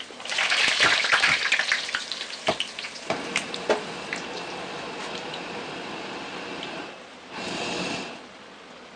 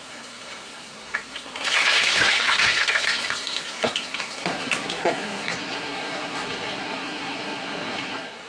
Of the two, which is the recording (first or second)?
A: first